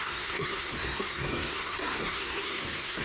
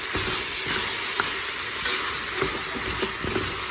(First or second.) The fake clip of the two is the first